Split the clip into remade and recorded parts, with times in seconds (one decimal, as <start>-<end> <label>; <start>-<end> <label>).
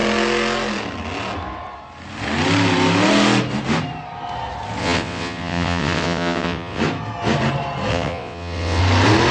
0.0-4.8 recorded; 4.8-6.8 remade; 6.8-7.9 recorded; 7.9-8.8 remade; 8.8-9.3 recorded